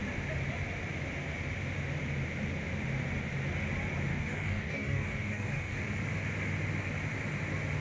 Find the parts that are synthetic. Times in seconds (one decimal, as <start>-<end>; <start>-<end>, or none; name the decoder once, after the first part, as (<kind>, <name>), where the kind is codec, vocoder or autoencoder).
4.1-5.8 (codec, DAC)